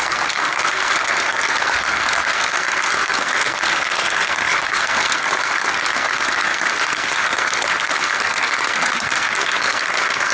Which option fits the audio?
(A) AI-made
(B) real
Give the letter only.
A